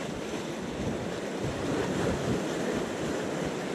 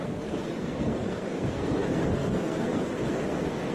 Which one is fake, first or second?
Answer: second